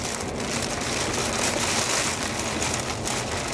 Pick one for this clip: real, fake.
real